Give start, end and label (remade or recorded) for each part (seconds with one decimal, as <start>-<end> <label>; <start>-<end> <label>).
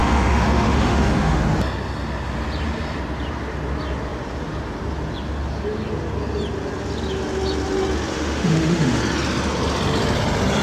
0.0-1.4 remade; 1.4-8.1 recorded; 8.1-9.0 remade; 9.0-10.6 recorded